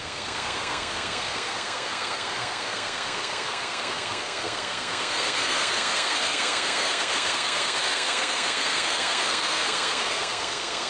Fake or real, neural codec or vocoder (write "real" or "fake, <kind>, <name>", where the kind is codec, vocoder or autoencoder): fake, codec, SNAC